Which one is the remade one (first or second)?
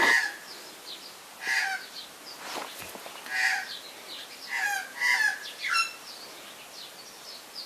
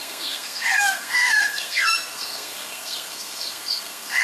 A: second